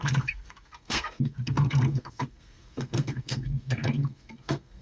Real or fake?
fake